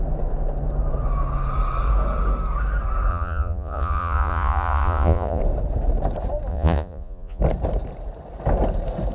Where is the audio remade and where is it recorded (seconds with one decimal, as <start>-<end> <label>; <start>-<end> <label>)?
0.0-3.1 recorded; 3.1-5.4 remade; 5.4-6.5 recorded; 6.5-7.4 remade; 7.4-9.1 recorded